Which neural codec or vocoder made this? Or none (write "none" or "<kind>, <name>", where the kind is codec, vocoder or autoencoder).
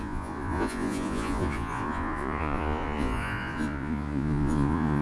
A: vocoder, Vocos